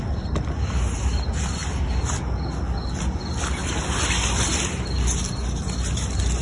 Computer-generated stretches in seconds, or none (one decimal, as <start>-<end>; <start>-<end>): none